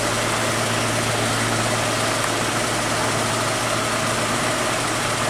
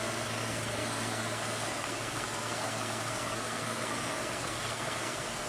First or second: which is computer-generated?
second